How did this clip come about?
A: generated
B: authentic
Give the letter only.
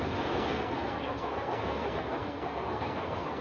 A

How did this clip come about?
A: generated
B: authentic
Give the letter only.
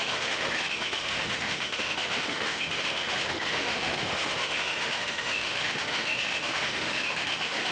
A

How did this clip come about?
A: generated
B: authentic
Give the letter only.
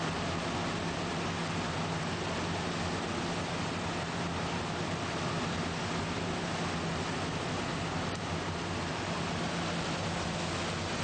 B